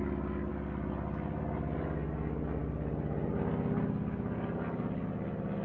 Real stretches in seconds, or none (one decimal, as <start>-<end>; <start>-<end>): 0.0-5.6